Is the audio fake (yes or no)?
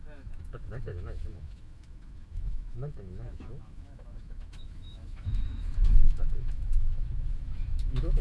yes